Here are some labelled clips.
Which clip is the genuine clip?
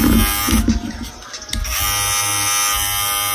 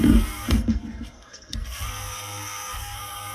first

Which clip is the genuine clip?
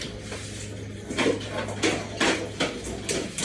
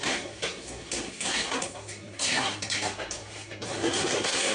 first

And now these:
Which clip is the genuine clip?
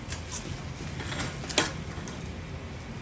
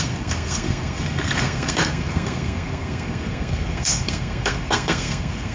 first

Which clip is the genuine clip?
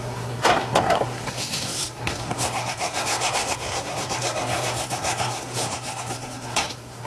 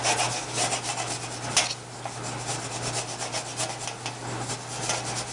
second